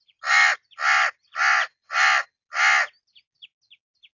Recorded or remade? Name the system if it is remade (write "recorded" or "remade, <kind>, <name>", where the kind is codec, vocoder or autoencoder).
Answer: recorded